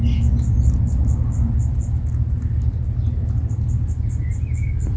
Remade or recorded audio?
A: recorded